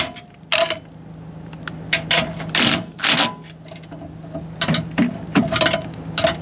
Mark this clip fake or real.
real